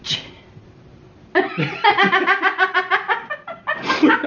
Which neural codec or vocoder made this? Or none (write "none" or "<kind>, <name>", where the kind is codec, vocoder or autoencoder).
none